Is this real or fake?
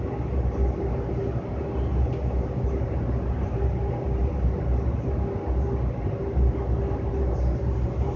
real